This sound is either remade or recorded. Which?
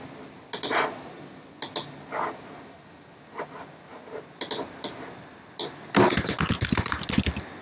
recorded